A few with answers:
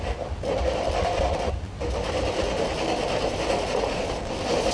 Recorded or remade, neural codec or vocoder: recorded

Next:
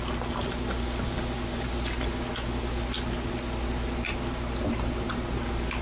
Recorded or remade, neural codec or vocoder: recorded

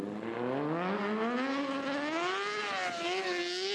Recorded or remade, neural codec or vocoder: recorded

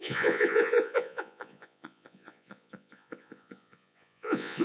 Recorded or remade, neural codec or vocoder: remade, vocoder, Vocos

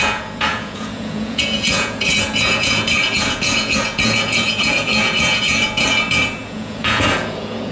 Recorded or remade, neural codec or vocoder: remade, vocoder, Vocos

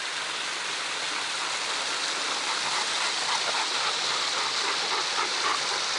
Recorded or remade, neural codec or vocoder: recorded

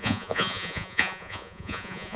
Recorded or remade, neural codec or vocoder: remade, vocoder, Vocos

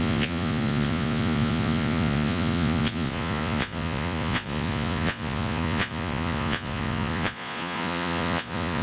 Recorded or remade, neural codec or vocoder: remade, vocoder, Vocos